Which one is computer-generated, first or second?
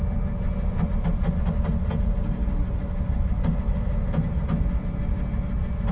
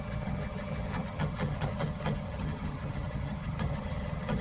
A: second